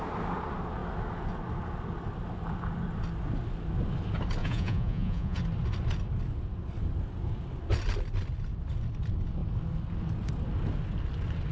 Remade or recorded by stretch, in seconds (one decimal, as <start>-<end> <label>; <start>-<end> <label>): 0.0-4.4 recorded; 4.4-5.4 remade; 5.4-11.5 recorded

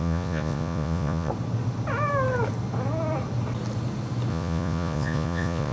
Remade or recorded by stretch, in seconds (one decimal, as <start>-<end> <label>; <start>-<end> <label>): 0.0-1.3 remade; 1.3-4.3 recorded; 4.3-5.7 remade

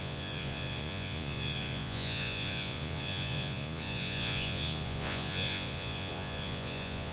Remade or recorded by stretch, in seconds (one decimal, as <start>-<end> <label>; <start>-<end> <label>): 0.0-7.1 remade